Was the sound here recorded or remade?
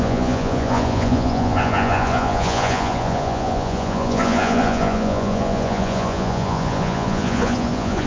remade